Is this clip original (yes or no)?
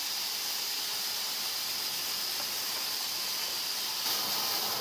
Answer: yes